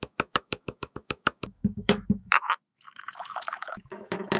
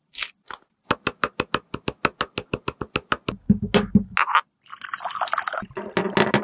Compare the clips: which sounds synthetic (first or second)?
first